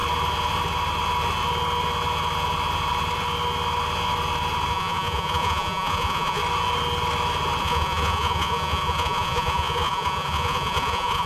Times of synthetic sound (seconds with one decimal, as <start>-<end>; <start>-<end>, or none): 4.7-6.4; 7.6-11.3